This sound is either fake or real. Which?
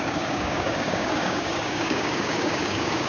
fake